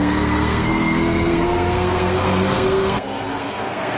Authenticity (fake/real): fake